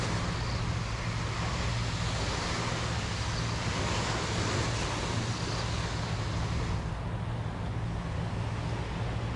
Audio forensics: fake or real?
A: real